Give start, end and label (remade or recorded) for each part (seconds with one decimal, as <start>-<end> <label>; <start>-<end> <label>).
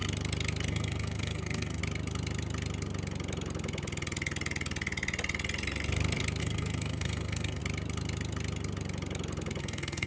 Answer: 0.0-0.7 recorded; 0.7-1.8 remade; 1.8-6.4 recorded; 6.4-7.6 remade; 7.6-9.6 recorded; 9.6-10.1 remade